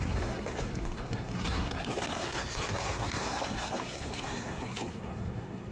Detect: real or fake fake